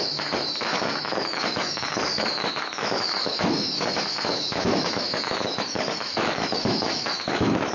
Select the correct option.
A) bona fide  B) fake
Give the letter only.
B